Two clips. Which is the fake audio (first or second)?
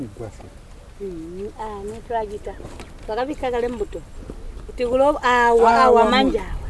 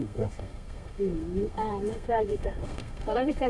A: second